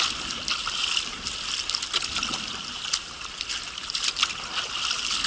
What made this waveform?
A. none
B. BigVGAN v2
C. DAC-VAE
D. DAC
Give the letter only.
A